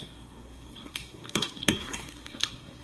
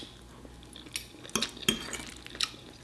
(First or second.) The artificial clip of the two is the first